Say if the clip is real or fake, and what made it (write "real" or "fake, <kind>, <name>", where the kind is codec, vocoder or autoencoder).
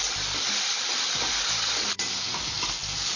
real